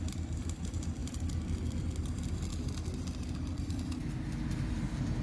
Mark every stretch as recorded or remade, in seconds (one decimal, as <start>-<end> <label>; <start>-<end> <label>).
0.0-5.2 recorded